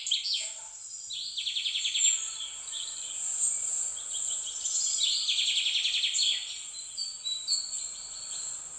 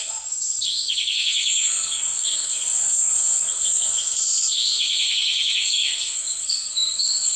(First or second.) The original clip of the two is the first